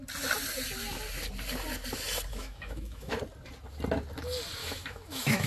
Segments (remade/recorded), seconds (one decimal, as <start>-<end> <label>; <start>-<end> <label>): 0.0-2.3 recorded; 2.3-3.2 remade; 3.2-4.6 recorded; 4.6-5.5 remade